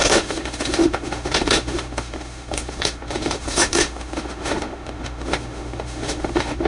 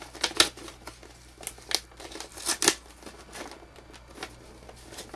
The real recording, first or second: second